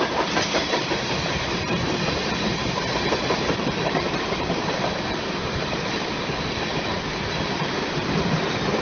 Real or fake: fake